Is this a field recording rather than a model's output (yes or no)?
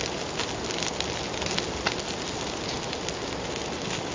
yes